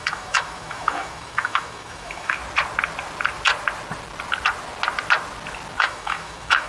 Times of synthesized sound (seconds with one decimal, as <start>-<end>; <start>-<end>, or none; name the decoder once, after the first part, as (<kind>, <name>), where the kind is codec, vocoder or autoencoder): 0.0-2.4 (autoencoder, DAC-VAE); 5.8-6.7